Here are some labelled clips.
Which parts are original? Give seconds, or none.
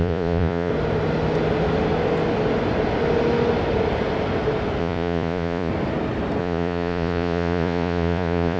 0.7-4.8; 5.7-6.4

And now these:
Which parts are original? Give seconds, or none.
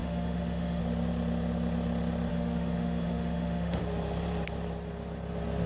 0.8-2.3; 3.8-5.7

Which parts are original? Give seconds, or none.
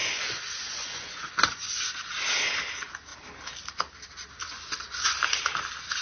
1.8-4.4; 5.1-6.0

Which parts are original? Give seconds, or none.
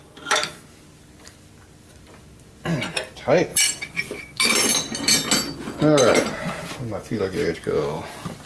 0.0-3.5; 4.4-8.5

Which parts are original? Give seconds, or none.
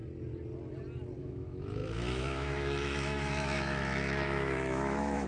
0.0-1.2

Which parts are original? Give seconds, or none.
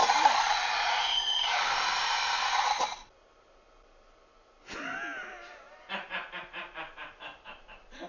2.8-5.2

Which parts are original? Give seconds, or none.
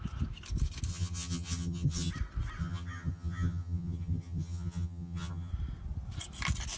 0.0-0.9; 2.1-2.6; 5.5-6.8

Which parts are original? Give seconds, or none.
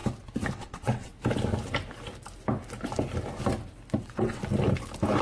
0.0-0.5; 1.1-4.0; 4.4-5.2